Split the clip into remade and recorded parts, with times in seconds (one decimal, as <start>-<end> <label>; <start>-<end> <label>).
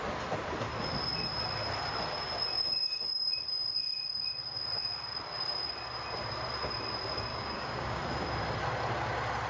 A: 0.0-7.3 recorded; 7.3-8.0 remade; 8.0-9.5 recorded